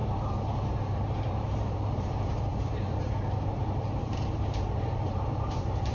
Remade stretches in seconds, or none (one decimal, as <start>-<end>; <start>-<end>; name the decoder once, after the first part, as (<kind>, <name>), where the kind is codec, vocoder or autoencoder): 0.0-5.9 (vocoder, BigVGAN v2)